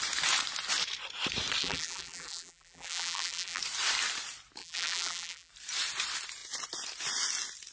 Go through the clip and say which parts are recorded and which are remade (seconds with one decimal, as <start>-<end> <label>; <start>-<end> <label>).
0.0-1.6 recorded; 1.6-3.6 remade; 3.6-4.6 recorded; 4.6-5.5 remade; 5.5-7.7 recorded